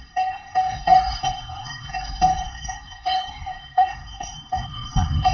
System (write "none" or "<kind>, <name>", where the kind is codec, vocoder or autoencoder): codec, SNAC